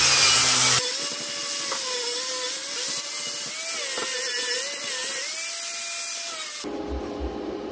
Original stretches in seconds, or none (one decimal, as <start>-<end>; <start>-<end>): 0.0-7.7